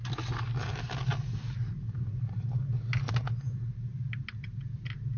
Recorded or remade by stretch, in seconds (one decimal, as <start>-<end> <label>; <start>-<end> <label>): 0.0-5.2 recorded